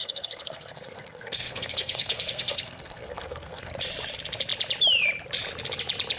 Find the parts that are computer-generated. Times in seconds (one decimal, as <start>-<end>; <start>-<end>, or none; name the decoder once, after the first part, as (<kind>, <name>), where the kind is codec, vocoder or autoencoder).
0.0-3.7 (codec, SNAC)